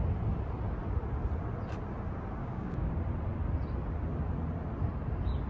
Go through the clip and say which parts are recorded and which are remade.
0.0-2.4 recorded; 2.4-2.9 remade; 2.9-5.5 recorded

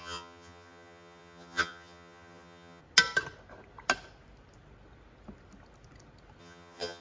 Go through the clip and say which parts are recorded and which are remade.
0.0-2.8 remade; 2.8-6.4 recorded; 6.4-7.0 remade

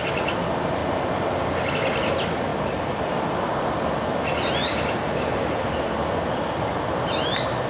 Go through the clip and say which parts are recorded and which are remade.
0.0-7.7 recorded